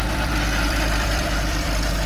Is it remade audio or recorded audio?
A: remade